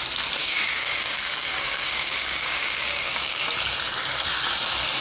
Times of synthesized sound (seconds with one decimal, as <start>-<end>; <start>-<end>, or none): 0.4-3.4